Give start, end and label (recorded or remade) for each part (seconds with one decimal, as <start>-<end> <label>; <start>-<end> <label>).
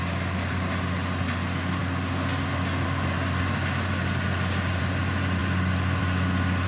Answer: 0.0-6.7 recorded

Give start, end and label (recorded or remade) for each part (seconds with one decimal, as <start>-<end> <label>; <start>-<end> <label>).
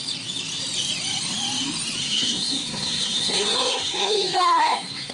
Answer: 0.0-2.0 recorded; 2.0-5.1 remade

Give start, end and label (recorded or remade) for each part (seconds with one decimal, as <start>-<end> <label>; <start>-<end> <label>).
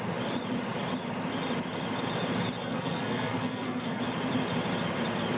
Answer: 0.0-2.6 recorded; 2.6-4.0 remade; 4.0-5.4 recorded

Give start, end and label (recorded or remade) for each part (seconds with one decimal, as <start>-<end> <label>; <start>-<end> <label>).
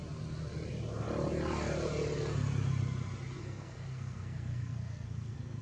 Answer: 0.0-3.4 recorded; 3.4-5.6 remade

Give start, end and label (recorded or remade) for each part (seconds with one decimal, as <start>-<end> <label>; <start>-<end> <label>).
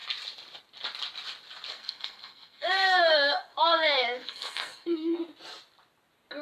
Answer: 0.0-1.7 recorded; 1.7-5.2 remade; 5.2-6.4 recorded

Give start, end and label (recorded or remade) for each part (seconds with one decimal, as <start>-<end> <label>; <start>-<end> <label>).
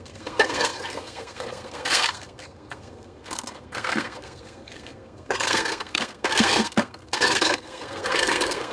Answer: 0.0-8.7 remade